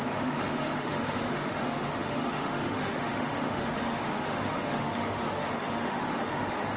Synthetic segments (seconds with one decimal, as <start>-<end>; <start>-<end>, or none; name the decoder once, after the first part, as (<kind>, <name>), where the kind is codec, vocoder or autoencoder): 0.0-6.8 (autoencoder, DAC-VAE)